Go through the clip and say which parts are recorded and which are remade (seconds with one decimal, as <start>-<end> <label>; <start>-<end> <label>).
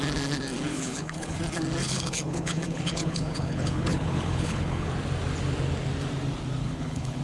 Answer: 0.0-0.7 recorded; 0.7-1.4 remade; 1.4-1.8 recorded; 1.8-4.9 remade; 4.9-6.6 recorded; 6.6-7.2 remade